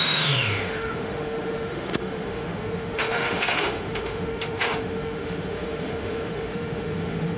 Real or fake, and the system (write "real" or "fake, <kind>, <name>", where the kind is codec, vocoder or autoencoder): fake, autoencoder, DAC-VAE